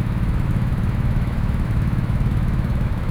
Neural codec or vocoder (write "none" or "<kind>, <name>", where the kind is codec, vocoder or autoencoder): autoencoder, DAC-VAE